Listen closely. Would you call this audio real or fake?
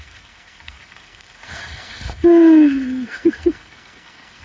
fake